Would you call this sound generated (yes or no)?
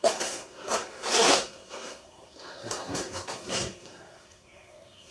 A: yes